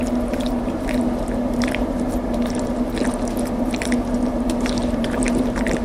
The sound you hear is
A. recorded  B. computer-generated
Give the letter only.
B